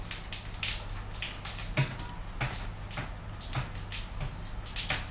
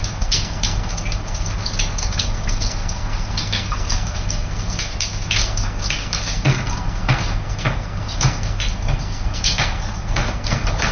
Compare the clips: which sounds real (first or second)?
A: first